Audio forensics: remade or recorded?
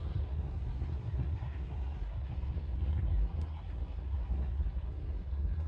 remade